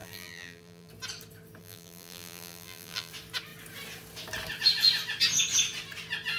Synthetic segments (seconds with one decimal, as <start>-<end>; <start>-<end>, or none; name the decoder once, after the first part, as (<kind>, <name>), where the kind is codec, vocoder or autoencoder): 0.0-0.9 (vocoder, BigVGAN v2); 1.6-3.1